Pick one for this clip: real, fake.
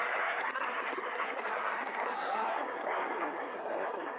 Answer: fake